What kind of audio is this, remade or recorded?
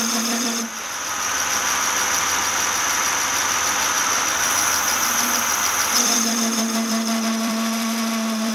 remade